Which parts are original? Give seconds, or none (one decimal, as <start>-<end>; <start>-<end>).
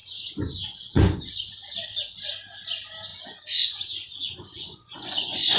1.3-3.1